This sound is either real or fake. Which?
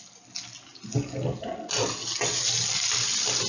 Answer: real